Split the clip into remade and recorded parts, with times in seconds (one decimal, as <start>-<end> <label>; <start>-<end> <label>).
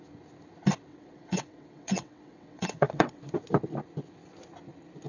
0.0-0.9 recorded; 0.9-3.2 remade; 3.2-5.1 recorded